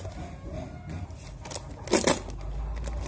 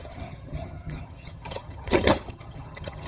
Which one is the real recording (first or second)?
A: first